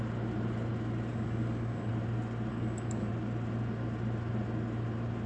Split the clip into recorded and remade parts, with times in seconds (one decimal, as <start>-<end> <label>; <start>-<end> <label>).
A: 0.0-1.1 recorded; 1.1-1.9 remade; 1.9-2.5 recorded; 2.5-3.1 remade; 3.1-5.3 recorded